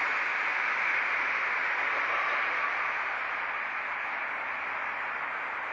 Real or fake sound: real